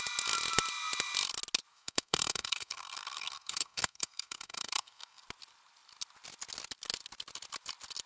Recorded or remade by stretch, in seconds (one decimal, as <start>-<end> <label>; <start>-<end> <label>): 0.0-1.7 recorded; 1.7-5.2 remade; 5.2-8.1 recorded